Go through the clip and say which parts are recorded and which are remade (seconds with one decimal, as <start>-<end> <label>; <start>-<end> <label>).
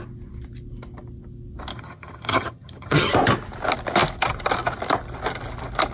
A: 0.0-1.7 recorded; 1.7-3.1 remade; 3.1-5.9 recorded